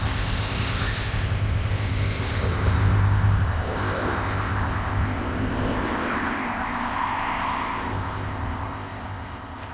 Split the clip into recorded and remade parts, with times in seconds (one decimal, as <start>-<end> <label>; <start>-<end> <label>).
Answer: 0.0-9.7 remade